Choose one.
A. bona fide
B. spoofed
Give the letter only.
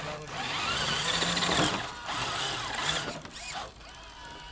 A